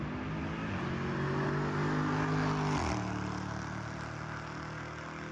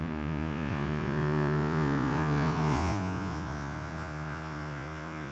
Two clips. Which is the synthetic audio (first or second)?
second